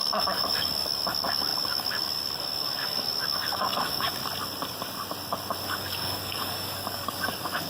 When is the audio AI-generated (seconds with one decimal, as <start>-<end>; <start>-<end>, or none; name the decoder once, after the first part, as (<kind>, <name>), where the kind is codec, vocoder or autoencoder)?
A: 0.0-4.2 (codec, DAC); 5.6-7.7